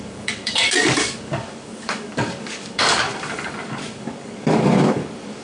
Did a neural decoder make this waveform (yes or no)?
yes